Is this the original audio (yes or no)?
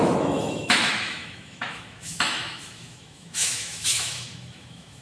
no